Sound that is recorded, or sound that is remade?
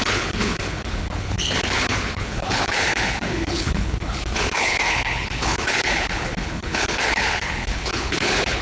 remade